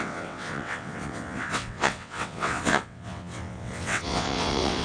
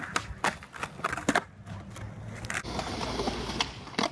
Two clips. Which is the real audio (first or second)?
second